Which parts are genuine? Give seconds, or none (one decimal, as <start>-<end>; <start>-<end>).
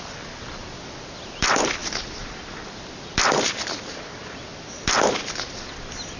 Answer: 0.0-6.2